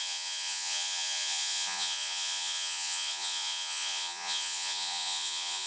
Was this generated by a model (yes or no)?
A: yes